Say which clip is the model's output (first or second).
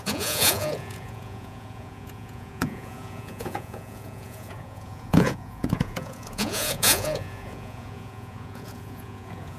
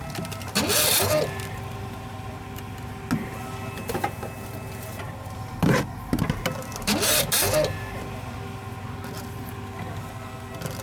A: first